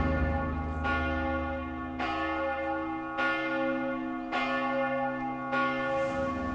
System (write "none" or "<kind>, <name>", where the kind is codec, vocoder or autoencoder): none